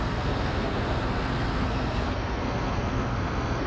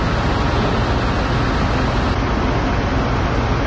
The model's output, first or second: first